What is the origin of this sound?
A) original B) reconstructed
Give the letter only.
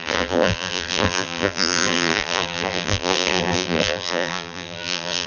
B